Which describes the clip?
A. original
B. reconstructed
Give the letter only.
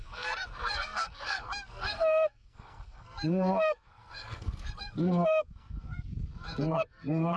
B